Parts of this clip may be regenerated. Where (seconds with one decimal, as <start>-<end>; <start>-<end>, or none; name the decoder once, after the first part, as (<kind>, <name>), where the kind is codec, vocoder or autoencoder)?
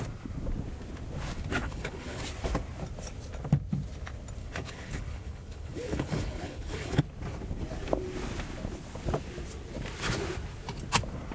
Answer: 1.6-2.2 (codec, HILCodec); 4.4-7.0